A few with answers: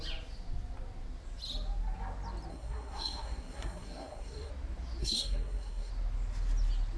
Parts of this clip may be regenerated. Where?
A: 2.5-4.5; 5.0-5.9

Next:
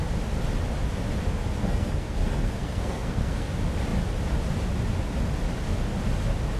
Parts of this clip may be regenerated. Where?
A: 1.6-3.5

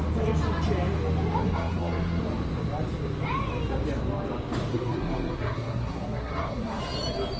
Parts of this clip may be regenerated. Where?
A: 1.4-2.2; 4.7-6.8

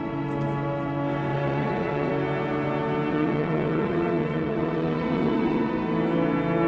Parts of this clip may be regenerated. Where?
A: 1.3-2.1; 3.1-5.7

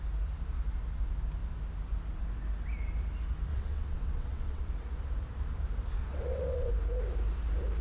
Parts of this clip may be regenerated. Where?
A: 3.5-4.6; 6.1-6.7

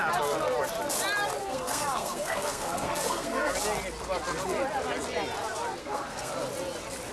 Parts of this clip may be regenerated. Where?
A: 1.4-3.5; 5.8-6.3

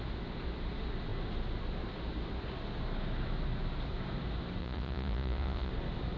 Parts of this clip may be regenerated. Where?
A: 4.6-5.7

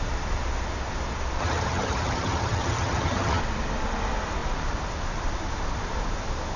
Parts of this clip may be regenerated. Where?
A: 1.4-3.4